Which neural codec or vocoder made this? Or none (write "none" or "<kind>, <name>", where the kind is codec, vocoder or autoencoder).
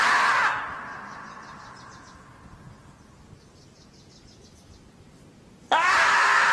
none